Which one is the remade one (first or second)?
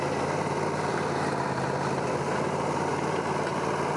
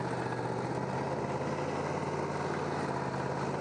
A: first